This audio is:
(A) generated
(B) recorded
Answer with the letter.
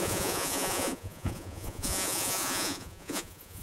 A